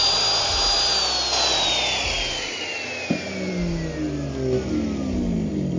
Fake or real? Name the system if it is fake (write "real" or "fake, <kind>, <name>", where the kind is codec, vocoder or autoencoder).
real